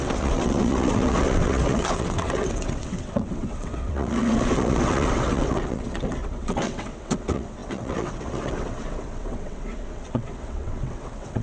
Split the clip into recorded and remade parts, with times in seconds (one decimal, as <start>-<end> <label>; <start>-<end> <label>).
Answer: 0.0-11.4 remade